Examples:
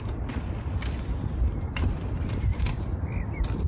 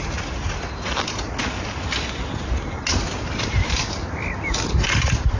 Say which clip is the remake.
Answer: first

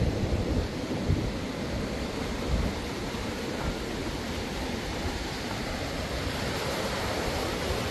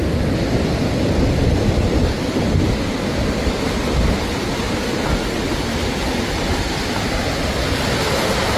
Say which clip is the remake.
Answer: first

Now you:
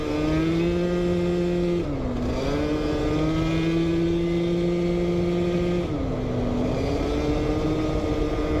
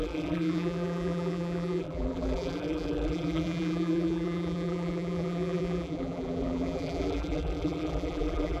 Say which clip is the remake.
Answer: second